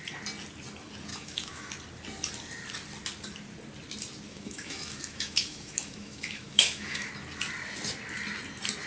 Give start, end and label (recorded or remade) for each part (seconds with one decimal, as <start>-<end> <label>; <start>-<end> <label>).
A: 0.0-1.1 recorded; 1.1-1.7 remade; 1.7-4.3 recorded; 4.3-7.1 remade; 7.1-8.9 recorded

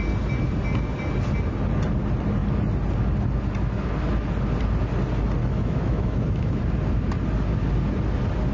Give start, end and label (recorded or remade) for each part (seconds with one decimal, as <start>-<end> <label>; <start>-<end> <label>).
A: 0.0-5.4 recorded; 5.4-6.6 remade; 6.6-8.5 recorded

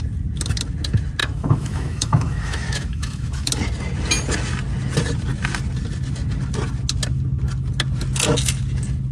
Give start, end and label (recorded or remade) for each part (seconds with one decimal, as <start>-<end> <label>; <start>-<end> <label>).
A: 0.0-1.2 recorded; 1.2-3.5 remade; 3.5-9.1 recorded

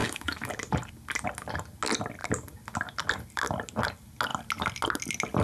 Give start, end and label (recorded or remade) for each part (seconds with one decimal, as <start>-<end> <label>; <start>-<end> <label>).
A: 0.0-0.5 remade; 0.5-5.4 recorded

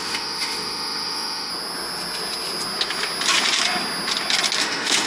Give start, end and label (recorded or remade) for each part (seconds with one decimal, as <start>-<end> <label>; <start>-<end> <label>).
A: 0.0-1.5 remade; 1.5-4.6 recorded; 4.6-5.1 remade

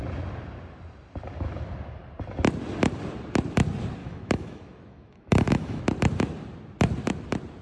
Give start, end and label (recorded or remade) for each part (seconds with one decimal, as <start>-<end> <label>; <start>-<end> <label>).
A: 0.0-4.0 recorded; 4.0-5.8 remade; 5.8-7.6 recorded

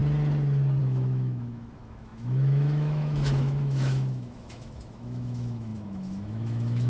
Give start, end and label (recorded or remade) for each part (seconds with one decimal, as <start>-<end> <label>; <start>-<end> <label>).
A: 0.0-0.8 recorded; 0.8-6.9 remade